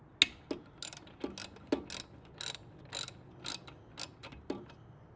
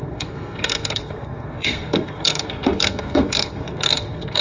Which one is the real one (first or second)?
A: first